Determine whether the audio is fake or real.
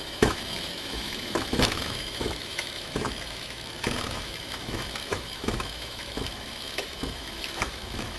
fake